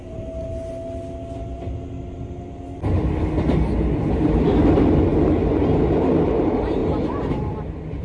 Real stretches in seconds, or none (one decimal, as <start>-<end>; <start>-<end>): 0.0-8.0

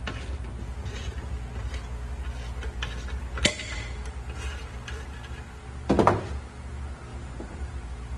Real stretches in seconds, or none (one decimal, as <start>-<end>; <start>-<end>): 0.0-7.1; 7.7-8.2

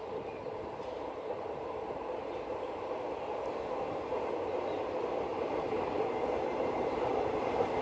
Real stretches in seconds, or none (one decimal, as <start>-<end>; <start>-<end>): 3.2-5.3; 6.0-6.5; 7.3-7.8

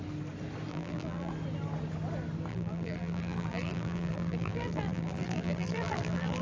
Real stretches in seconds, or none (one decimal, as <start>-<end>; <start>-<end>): 0.0-0.7; 1.3-2.5

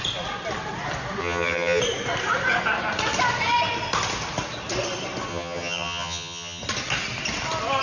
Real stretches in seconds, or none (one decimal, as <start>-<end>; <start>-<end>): 0.0-1.2; 1.8-5.3; 6.6-7.8

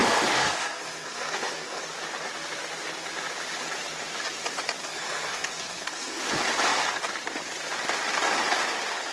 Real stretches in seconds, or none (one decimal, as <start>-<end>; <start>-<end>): 1.8-4.8; 6.2-9.1

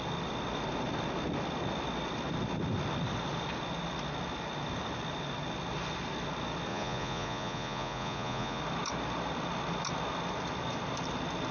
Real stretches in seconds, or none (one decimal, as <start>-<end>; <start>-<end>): 0.0-6.7; 8.6-11.5

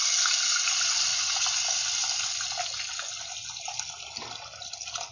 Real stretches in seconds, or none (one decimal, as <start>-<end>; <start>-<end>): 0.0-5.1